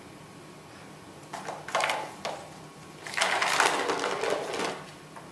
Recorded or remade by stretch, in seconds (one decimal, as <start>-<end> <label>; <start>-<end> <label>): 0.0-5.3 recorded